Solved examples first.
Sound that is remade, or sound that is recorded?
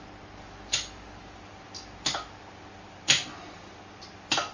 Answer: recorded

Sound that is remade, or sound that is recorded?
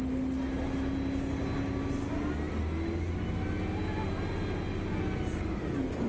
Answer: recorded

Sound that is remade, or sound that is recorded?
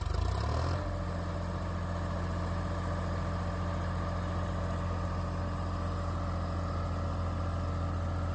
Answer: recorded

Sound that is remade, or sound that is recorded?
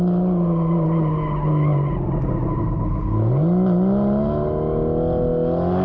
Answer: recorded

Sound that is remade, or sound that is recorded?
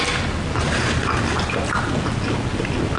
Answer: recorded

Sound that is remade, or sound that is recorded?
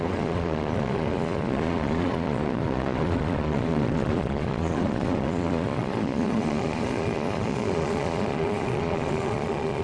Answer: remade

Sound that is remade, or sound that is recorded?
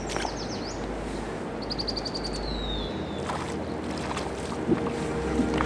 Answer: recorded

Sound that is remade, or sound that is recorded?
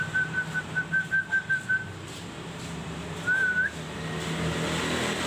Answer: recorded